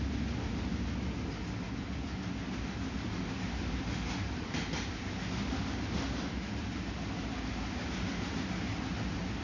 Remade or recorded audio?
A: recorded